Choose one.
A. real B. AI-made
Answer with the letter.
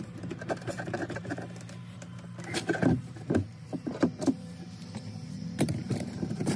B